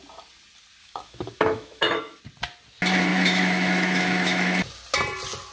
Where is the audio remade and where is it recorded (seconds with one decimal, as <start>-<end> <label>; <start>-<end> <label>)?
0.0-0.8 recorded; 0.8-2.2 remade; 2.2-3.1 recorded; 3.1-4.6 remade; 4.6-5.5 recorded